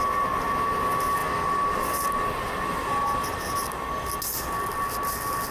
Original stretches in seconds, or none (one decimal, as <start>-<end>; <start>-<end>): 0.0-5.5